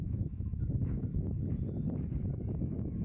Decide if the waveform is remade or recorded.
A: remade